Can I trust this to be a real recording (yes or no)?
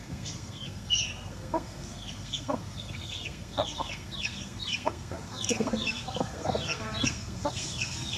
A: no